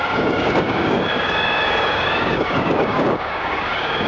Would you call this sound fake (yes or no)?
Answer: yes